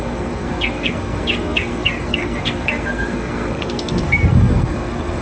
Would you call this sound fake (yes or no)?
yes